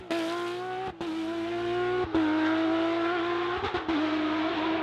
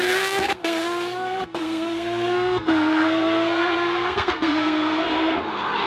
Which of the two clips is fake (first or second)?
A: second